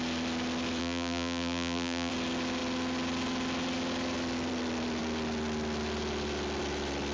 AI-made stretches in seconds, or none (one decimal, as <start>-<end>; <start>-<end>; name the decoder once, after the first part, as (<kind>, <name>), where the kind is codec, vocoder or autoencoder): 0.8-2.1 (vocoder, BigVGAN v2)

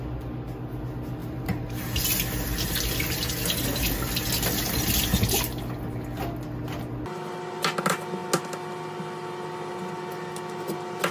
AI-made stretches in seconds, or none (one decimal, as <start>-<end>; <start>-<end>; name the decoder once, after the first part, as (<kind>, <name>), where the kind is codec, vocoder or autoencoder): 1.2-2.0 (vocoder, BigVGAN v2)

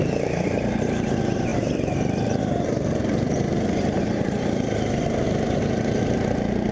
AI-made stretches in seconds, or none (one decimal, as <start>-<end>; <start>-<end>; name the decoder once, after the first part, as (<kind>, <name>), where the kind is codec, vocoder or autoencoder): 0.0-6.7 (vocoder, BigVGAN v2)

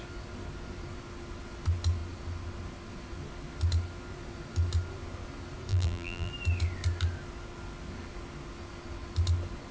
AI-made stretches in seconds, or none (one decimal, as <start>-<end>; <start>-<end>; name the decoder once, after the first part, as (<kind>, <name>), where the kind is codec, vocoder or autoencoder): 5.7-6.3 (vocoder, BigVGAN v2)